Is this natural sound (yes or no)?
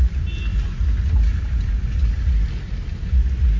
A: yes